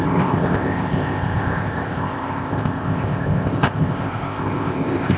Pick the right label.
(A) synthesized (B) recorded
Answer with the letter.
A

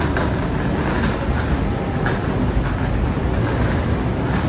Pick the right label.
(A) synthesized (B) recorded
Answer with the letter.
B